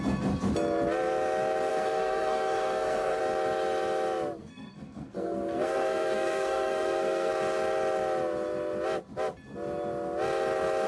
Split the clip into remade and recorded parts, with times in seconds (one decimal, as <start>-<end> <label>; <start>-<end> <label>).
0.0-1.7 recorded; 1.7-3.2 remade; 3.2-4.4 recorded; 4.4-7.3 remade; 7.3-10.9 recorded